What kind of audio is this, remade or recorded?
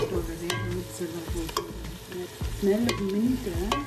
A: recorded